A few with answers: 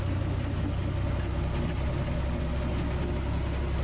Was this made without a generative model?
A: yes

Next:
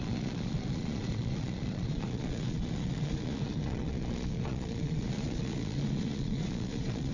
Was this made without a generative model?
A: no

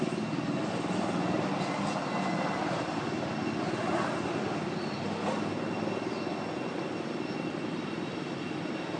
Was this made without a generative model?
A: yes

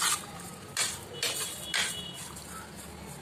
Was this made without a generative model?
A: yes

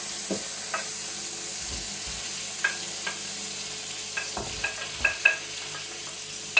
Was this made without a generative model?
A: yes